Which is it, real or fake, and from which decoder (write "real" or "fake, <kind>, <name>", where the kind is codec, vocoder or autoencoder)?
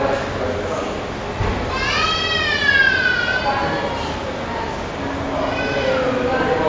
real